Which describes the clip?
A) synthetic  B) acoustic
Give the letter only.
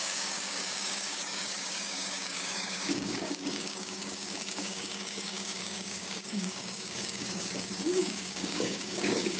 A